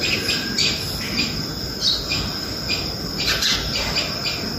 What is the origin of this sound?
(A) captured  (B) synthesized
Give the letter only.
A